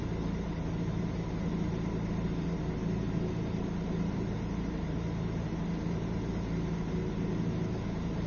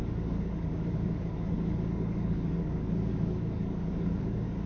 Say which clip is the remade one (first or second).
second